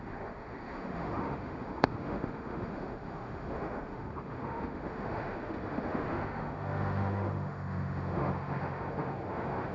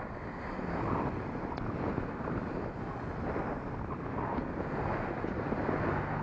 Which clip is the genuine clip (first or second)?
second